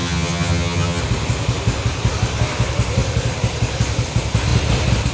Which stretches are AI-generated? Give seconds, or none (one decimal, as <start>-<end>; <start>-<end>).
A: 0.0-1.0